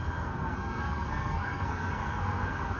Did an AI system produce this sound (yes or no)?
yes